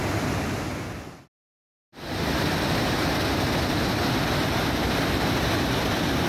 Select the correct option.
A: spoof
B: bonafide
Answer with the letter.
A